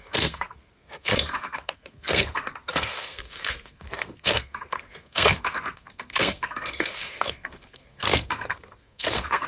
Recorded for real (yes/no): no